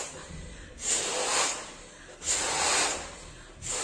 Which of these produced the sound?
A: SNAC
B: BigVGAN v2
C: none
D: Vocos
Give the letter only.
C